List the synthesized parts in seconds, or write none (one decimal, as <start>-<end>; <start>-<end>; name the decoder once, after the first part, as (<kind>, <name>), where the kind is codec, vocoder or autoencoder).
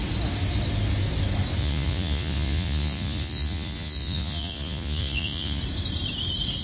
1.6-5.6 (vocoder, Vocos)